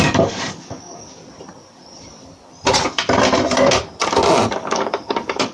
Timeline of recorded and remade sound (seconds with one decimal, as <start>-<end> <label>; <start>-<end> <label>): 0.0-1.2 remade; 1.2-4.5 recorded; 4.5-5.5 remade